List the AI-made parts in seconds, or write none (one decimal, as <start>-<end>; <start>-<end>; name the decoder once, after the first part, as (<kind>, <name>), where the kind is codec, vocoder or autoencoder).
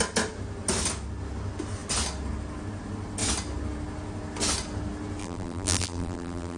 5.2-6.6 (vocoder, BigVGAN v2)